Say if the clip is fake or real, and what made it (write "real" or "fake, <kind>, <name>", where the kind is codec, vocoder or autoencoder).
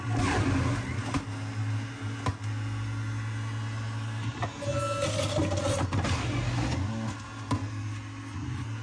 real